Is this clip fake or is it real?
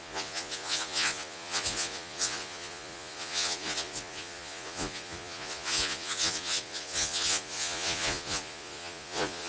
fake